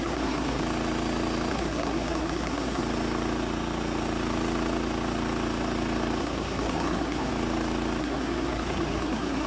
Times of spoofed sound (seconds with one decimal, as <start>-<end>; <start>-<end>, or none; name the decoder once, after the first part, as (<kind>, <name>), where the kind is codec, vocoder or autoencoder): 0.0-0.6 (codec, SNAC); 1.5-2.8; 6.2-7.3; 8.0-9.5